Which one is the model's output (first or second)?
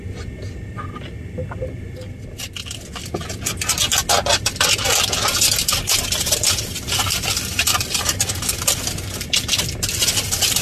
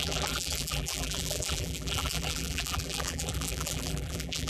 second